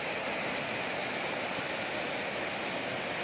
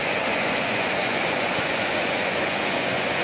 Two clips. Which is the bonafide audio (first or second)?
first